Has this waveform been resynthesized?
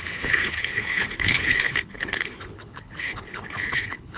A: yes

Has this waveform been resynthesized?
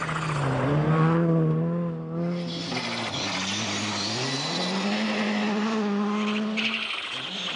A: no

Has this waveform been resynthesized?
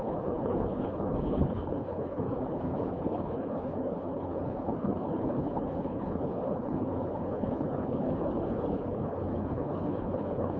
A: yes